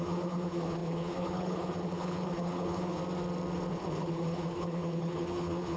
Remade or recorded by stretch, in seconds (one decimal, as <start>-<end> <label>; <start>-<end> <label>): 0.0-3.0 remade; 3.0-3.7 recorded; 3.7-5.8 remade